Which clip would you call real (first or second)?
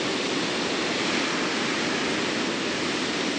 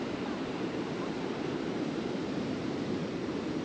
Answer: first